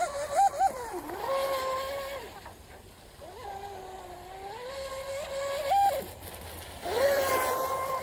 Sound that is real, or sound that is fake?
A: real